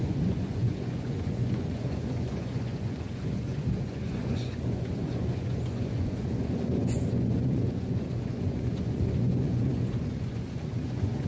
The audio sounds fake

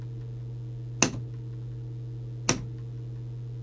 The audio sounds real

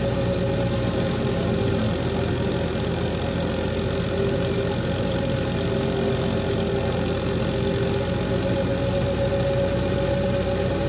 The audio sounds real